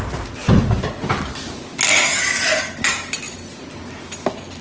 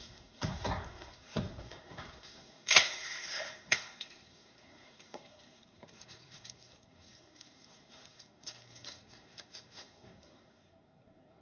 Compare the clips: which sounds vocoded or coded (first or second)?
second